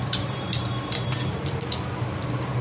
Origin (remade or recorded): remade